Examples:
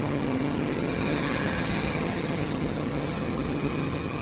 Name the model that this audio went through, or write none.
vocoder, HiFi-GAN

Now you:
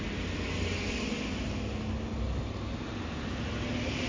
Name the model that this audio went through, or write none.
none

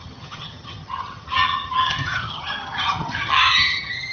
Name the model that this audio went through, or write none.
vocoder, HiFi-GAN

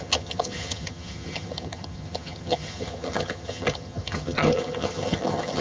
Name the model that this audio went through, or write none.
vocoder, HiFi-GAN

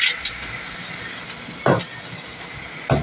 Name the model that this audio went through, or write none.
none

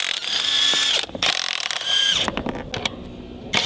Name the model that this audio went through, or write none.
none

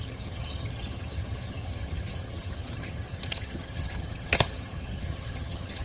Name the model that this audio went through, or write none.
vocoder, HiFi-GAN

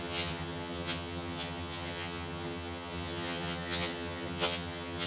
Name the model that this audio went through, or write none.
vocoder, HiFi-GAN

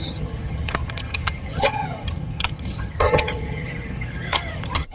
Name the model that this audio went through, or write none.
vocoder, HiFi-GAN